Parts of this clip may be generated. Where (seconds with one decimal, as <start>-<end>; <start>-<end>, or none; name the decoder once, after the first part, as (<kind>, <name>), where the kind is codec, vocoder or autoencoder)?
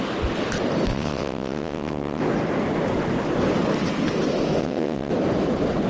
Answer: 0.9-2.2 (vocoder, WaveNeXt); 4.6-5.1